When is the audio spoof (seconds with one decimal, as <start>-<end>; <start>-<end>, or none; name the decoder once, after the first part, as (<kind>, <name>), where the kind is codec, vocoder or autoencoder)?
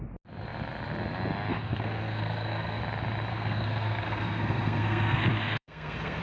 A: 1.5-2.8 (codec, SNAC); 3.3-6.2